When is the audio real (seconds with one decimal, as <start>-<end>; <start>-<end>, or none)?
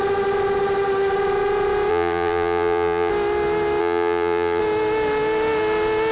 0.0-1.9; 3.1-3.8; 4.6-6.1